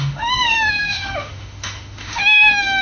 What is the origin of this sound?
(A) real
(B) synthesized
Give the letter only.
B